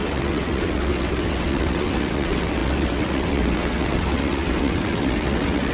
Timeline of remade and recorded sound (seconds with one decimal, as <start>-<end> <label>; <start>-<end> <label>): 0.0-5.7 remade